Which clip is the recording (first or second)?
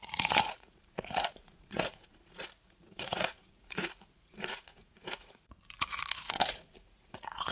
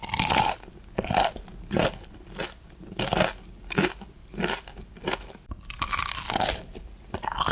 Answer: second